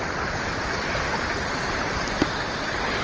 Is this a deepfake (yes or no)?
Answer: no